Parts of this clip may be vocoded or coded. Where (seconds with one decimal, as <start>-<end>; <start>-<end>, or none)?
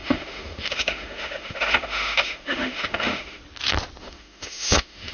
0.0-3.4; 4.0-5.1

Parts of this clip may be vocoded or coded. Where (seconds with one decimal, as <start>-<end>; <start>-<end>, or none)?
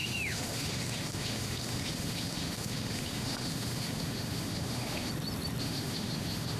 0.0-5.1; 5.6-6.6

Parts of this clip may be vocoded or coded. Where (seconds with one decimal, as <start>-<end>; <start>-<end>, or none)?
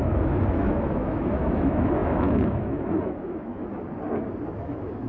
0.0-3.6; 4.5-5.1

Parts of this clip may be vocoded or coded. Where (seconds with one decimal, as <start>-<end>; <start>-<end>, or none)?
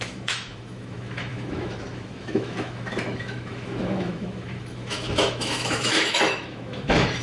0.0-7.2